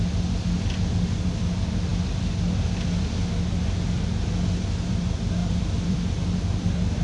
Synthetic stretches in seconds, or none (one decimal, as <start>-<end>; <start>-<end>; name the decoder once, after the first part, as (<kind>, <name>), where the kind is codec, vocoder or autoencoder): 5.4-6.1 (vocoder, BigVGAN v2)